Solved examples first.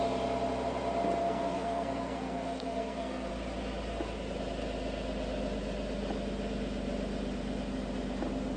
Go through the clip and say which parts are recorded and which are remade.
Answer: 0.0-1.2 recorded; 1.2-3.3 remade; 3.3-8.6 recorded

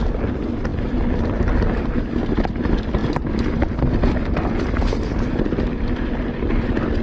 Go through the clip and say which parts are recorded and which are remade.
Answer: 0.0-7.0 recorded

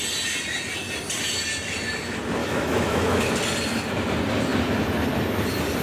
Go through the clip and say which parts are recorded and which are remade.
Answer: 0.0-2.4 recorded; 2.4-3.3 remade; 3.3-5.8 recorded

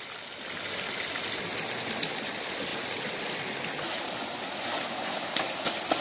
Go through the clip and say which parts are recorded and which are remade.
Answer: 0.0-6.0 recorded

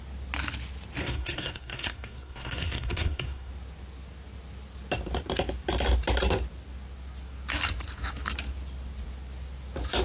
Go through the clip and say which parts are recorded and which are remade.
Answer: 0.0-1.0 recorded; 1.0-3.5 remade; 3.5-10.0 recorded

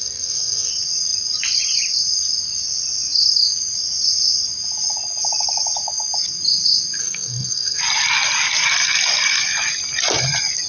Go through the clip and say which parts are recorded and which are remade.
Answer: 0.0-0.7 remade; 0.7-7.0 recorded; 7.0-7.8 remade; 7.8-10.7 recorded

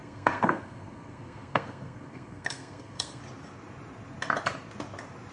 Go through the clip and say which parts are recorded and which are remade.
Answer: 0.0-3.2 remade; 3.2-5.3 recorded

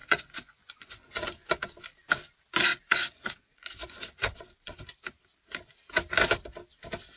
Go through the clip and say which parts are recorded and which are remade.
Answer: 0.0-1.5 remade; 1.5-2.7 recorded; 2.7-4.8 remade; 4.8-7.2 recorded